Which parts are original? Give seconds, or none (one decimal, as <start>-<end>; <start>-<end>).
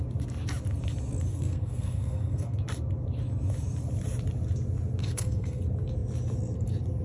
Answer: 0.0-1.3; 2.6-5.0; 5.6-7.0